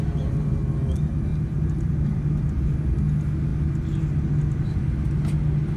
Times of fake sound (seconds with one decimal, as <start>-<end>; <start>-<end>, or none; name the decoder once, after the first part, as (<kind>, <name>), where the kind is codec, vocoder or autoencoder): 1.3-2.2 (vocoder, BigVGAN v2)